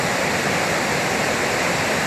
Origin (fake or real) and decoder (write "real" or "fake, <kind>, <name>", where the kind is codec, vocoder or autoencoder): real